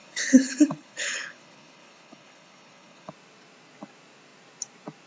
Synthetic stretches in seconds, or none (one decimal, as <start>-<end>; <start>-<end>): 0.0-3.1